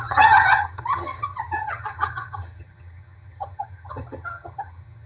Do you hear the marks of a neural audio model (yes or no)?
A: yes